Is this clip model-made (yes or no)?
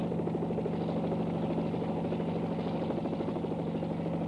no